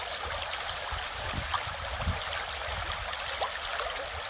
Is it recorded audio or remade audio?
recorded